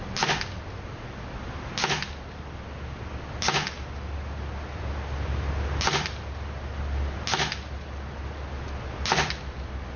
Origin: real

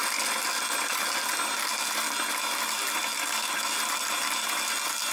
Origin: real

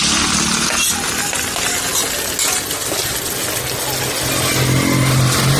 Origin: real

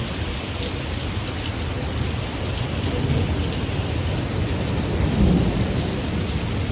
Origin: real